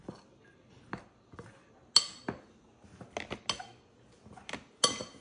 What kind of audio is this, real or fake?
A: real